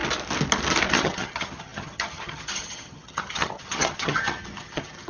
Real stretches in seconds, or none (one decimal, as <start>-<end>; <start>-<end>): 0.0-0.9